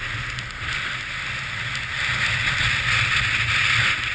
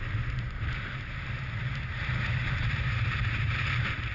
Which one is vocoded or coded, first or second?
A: second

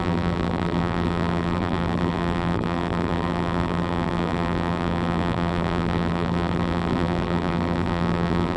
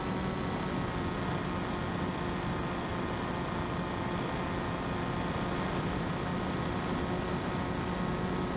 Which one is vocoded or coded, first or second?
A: first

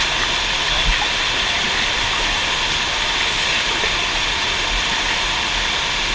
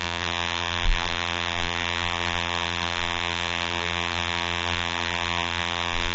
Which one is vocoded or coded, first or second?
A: second